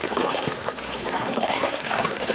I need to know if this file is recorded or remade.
remade